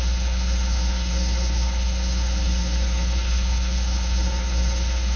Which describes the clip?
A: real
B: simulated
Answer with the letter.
B